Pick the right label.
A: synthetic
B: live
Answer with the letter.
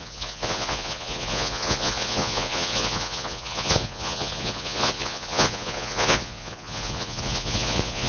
A